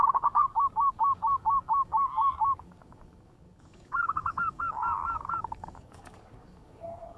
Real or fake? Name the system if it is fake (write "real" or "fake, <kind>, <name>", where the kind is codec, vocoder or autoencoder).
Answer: fake, codec, DAC